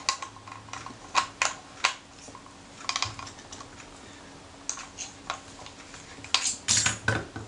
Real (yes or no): yes